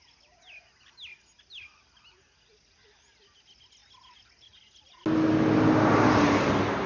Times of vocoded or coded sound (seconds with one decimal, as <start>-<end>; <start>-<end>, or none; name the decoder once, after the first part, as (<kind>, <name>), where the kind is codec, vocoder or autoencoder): none